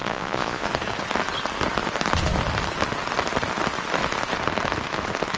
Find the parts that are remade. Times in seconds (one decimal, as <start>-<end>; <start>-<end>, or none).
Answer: 0.0-0.7